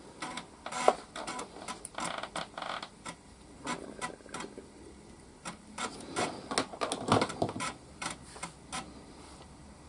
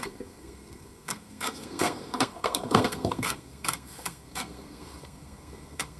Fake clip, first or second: second